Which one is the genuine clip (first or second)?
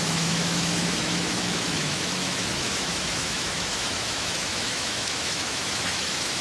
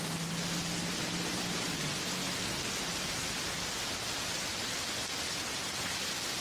second